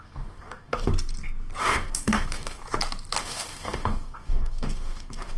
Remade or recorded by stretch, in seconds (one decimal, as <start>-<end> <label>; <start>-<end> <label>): 0.0-0.9 remade; 0.9-1.6 recorded; 1.6-2.6 remade; 2.6-3.2 recorded; 3.2-5.4 remade